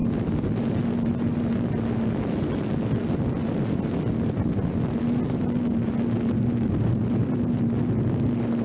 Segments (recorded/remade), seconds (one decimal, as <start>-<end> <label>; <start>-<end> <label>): 0.0-8.6 recorded